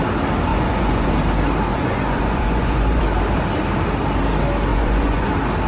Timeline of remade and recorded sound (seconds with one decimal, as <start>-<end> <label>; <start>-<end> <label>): 0.0-0.5 recorded; 0.5-1.1 remade; 1.1-1.7 recorded; 1.7-3.0 remade; 3.0-4.7 recorded; 4.7-5.3 remade; 5.3-5.7 recorded